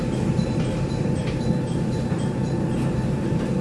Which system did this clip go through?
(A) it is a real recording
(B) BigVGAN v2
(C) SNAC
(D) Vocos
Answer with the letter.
B